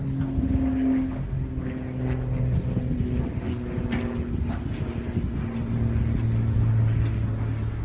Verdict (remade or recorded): recorded